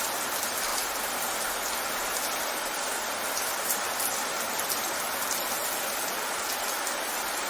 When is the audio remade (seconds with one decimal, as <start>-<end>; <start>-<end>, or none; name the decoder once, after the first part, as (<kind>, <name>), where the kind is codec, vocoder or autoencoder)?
none